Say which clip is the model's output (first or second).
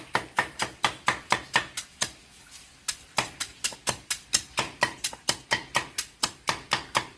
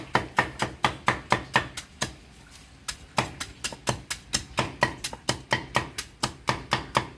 first